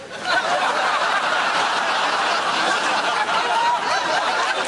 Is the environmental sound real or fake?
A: real